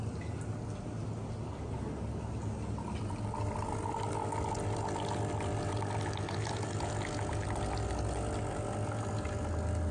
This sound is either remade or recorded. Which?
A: recorded